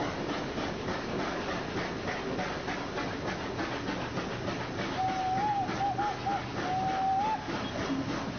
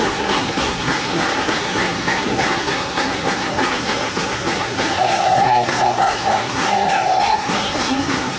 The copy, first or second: second